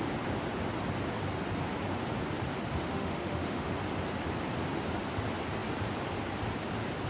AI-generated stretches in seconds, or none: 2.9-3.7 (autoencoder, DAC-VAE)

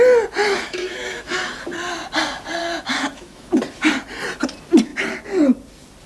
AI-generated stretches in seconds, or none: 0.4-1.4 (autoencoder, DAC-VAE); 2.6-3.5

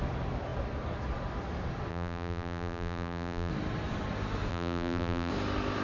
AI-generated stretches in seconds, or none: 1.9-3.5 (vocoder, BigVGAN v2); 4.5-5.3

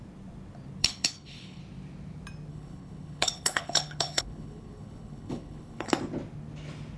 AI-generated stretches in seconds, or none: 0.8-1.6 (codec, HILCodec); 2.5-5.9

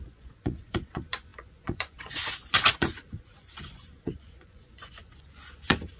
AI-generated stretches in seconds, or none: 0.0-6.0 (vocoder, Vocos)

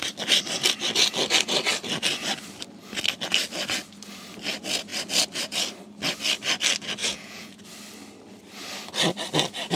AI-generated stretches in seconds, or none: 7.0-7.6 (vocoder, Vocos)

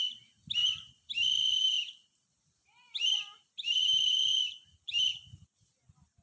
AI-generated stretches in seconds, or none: 0.6-1.5 (vocoder, BigVGAN v2); 2.0-5.7